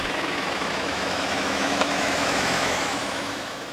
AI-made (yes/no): yes